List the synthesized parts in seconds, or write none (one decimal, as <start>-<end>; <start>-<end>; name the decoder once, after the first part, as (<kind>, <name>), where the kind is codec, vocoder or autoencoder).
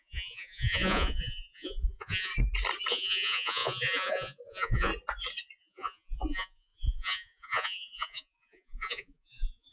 0.0-2.3 (vocoder, Vocos); 2.9-4.9; 5.6-9.7